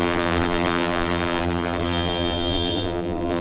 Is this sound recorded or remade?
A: remade